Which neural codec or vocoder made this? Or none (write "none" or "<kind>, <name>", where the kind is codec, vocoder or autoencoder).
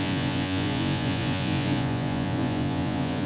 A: vocoder, Vocos